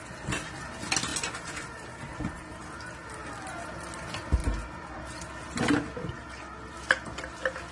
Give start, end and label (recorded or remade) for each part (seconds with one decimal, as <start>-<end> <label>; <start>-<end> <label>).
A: 0.0-7.7 recorded

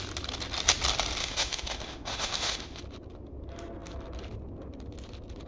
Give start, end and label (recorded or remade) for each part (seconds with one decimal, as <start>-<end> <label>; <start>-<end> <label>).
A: 0.0-1.2 recorded; 1.2-2.8 remade; 2.8-5.5 recorded

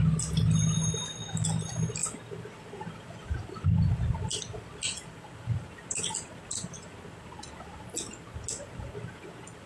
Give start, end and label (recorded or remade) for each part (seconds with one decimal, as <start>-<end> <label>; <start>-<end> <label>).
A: 0.0-9.7 recorded

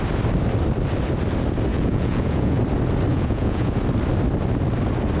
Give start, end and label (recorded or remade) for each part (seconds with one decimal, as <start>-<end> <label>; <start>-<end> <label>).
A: 0.0-1.7 recorded; 1.7-2.6 remade; 2.6-3.1 recorded; 3.1-3.8 remade; 3.8-5.2 recorded

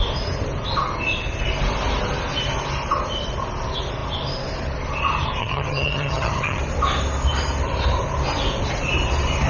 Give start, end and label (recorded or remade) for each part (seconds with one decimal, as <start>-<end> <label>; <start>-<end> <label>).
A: 0.0-5.4 recorded; 5.4-6.6 remade; 6.6-9.5 recorded

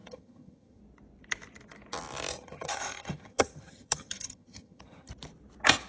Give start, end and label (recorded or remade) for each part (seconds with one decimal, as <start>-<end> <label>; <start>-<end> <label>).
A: 0.0-0.8 remade; 0.8-2.3 recorded; 2.3-5.1 remade; 5.1-5.9 recorded